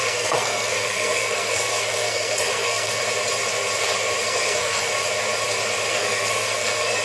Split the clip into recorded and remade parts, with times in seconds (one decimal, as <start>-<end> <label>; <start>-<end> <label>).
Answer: 0.0-3.0 remade; 3.0-4.2 recorded; 4.2-4.9 remade; 4.9-5.9 recorded; 5.9-7.0 remade

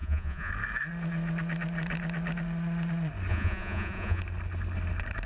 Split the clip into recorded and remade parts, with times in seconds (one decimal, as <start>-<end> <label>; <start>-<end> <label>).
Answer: 0.0-0.5 remade; 0.5-3.3 recorded; 3.3-4.2 remade; 4.2-5.3 recorded

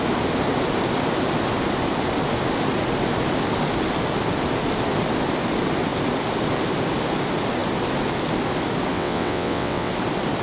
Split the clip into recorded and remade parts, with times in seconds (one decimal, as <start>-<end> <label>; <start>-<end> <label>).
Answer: 0.0-8.9 recorded; 8.9-9.9 remade; 9.9-10.4 recorded

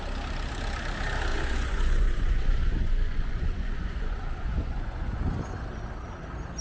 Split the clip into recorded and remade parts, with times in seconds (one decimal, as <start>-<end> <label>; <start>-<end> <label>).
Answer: 0.0-1.3 recorded; 1.3-5.2 remade; 5.2-6.6 recorded